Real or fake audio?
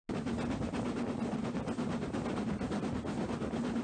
real